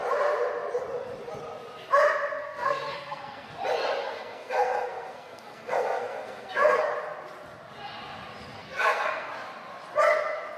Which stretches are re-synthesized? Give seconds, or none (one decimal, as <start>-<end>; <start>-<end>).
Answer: 2.4-3.5; 4.0-6.9; 8.6-9.3